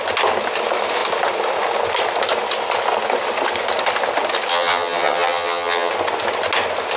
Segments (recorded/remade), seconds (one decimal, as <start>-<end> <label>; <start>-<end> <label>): 0.0-4.5 recorded; 4.5-5.9 remade; 5.9-7.0 recorded